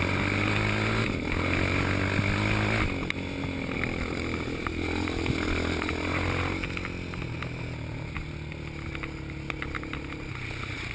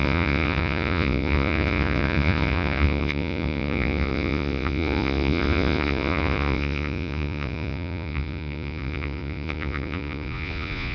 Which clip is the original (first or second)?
first